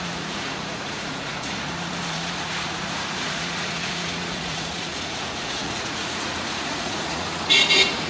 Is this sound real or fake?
fake